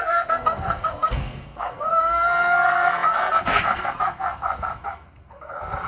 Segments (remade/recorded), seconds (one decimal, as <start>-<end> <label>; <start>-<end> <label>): 0.0-5.9 remade

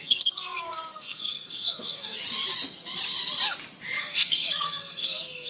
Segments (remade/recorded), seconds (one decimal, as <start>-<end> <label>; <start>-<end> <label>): 0.0-2.2 remade; 2.2-4.0 recorded; 4.0-5.5 remade

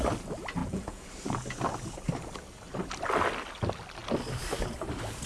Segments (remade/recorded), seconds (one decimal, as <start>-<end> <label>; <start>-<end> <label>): 0.0-0.6 recorded; 0.6-1.1 remade; 1.1-5.3 recorded

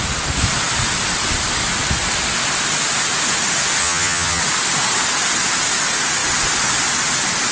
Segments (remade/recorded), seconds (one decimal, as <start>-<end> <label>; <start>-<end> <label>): 0.0-3.8 recorded; 3.8-4.4 remade; 4.4-7.5 recorded

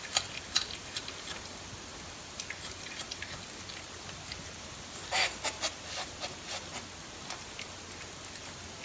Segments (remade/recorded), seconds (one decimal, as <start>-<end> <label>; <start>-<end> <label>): 0.0-8.8 recorded

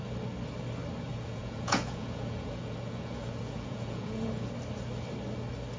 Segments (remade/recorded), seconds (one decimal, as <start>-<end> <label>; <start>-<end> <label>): 0.0-1.1 recorded; 1.1-4.5 remade; 4.5-5.8 recorded

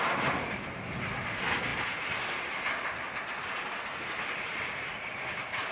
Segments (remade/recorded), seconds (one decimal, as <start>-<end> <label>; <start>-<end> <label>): 0.0-5.7 recorded

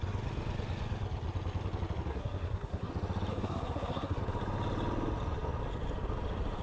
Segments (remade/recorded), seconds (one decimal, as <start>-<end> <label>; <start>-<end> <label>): 0.0-2.1 recorded; 2.1-2.9 remade; 2.9-3.3 recorded; 3.3-4.2 remade; 4.2-6.6 recorded